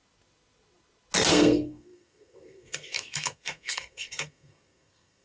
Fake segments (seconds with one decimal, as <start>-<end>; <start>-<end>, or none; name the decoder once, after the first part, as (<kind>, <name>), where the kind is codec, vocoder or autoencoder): 1.3-5.2 (codec, SNAC)